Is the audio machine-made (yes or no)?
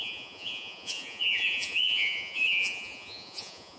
yes